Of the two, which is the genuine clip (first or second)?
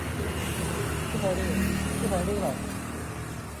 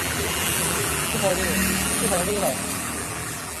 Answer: first